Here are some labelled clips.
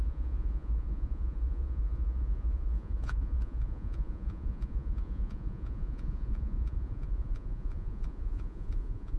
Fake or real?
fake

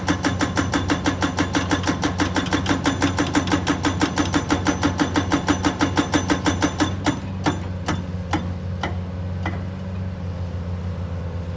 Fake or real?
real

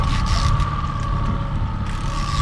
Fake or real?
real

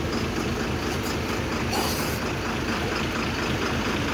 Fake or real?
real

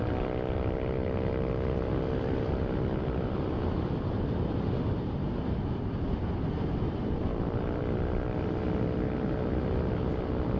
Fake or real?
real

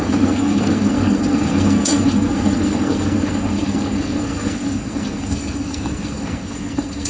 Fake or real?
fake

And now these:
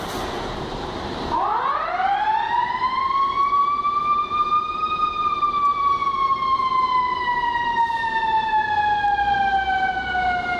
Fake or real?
fake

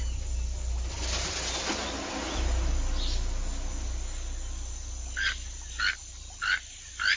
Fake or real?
real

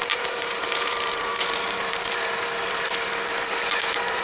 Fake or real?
fake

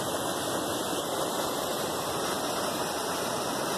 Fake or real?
real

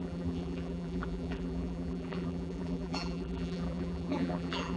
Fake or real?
fake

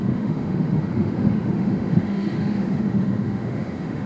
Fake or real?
fake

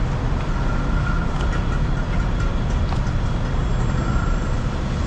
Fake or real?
real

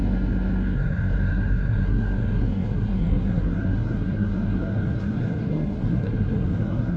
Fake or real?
fake